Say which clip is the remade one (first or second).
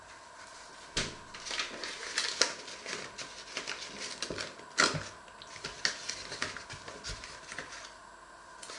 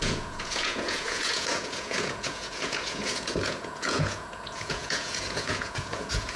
second